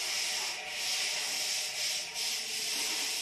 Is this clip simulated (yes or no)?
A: no